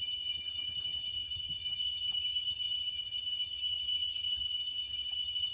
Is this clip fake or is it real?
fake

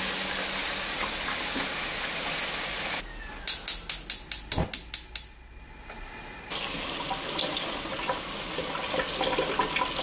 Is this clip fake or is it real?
real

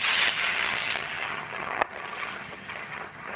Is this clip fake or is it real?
fake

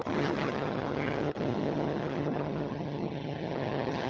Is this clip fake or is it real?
fake